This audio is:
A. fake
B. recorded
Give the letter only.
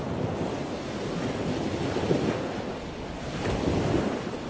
B